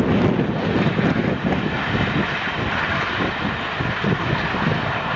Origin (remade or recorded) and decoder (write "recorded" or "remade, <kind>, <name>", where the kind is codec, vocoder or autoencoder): recorded